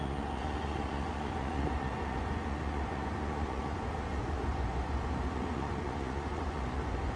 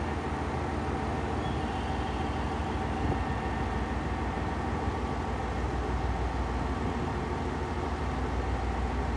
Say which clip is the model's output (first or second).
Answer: first